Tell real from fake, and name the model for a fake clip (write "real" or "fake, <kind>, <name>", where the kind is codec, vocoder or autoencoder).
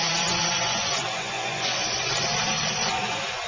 fake, vocoder, Vocos